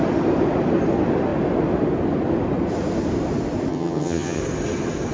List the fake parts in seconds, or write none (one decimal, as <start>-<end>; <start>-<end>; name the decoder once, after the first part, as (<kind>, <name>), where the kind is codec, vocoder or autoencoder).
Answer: 3.7-4.4 (vocoder, HiFi-GAN)

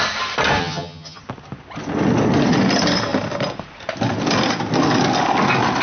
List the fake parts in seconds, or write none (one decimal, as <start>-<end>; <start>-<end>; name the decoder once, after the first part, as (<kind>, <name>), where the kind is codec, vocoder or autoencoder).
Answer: 0.6-1.2 (vocoder, HiFi-GAN)

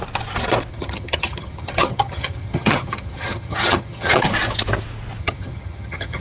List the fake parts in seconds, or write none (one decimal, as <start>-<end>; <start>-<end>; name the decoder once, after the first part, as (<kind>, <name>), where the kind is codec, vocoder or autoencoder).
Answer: 0.7-4.3 (vocoder, HiFi-GAN); 5.2-6.2

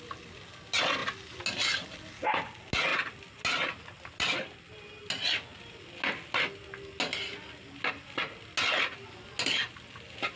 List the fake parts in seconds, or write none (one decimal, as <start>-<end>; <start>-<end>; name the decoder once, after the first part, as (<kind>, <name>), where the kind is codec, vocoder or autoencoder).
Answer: none

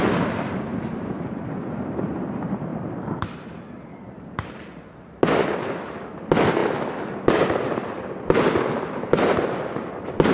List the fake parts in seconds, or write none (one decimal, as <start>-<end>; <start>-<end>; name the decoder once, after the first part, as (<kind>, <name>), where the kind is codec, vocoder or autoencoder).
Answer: none

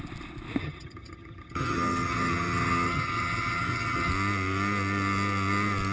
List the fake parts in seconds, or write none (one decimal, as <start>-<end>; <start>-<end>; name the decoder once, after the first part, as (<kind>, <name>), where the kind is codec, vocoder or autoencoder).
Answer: 0.6-4.1 (vocoder, HiFi-GAN)

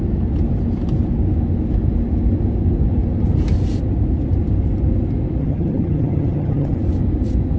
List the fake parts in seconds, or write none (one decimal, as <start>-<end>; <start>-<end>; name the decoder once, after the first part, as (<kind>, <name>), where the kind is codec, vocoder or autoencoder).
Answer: 5.4-6.8 (vocoder, HiFi-GAN)

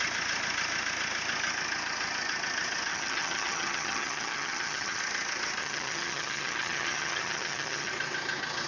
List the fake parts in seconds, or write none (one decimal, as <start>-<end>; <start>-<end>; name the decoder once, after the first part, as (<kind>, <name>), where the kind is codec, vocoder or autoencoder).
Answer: 2.9-5.0 (vocoder, HiFi-GAN); 5.6-7.9